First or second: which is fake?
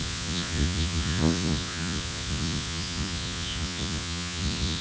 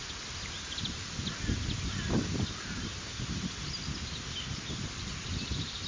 first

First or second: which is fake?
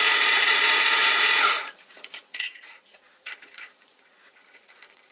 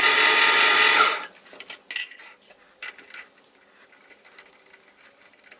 first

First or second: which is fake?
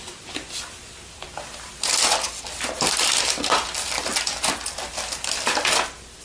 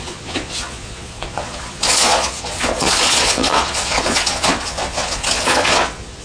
second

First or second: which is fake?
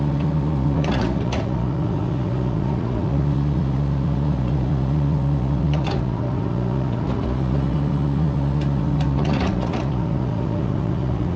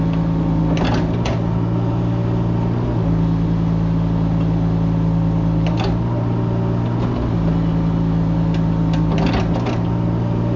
first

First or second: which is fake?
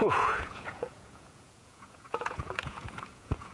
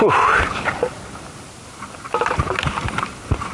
first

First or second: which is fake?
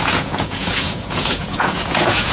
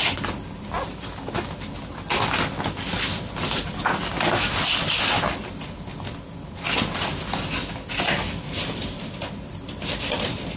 first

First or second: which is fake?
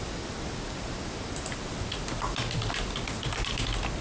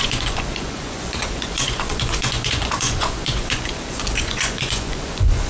second